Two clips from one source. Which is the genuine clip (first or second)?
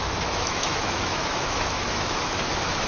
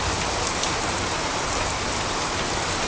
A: second